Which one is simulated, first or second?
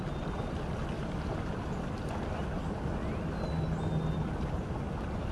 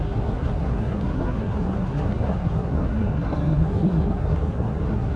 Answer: second